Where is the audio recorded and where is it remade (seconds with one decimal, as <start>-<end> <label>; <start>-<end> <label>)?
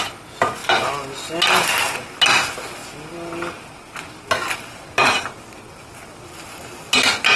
0.0-7.4 recorded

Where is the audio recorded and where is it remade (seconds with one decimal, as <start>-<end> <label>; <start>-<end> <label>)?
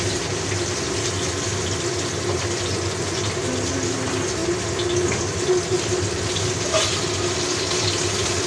0.0-2.7 recorded; 2.7-3.2 remade; 3.2-8.5 recorded